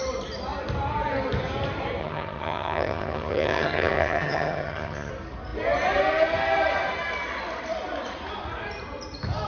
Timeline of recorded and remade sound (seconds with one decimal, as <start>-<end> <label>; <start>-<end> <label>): 0.0-2.0 recorded; 2.0-5.1 remade; 5.1-9.5 recorded